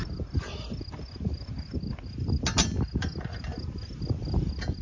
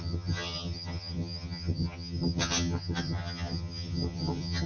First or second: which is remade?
second